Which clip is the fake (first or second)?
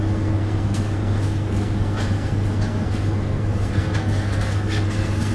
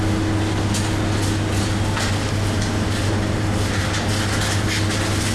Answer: first